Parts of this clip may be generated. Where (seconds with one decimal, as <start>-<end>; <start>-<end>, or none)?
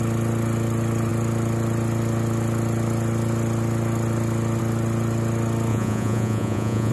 5.7-6.9